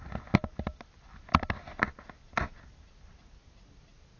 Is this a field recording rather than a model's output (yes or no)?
yes